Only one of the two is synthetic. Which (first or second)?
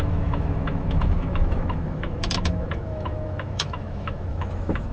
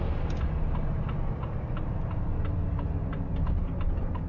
first